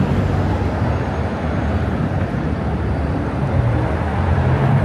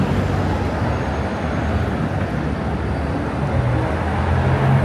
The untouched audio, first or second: second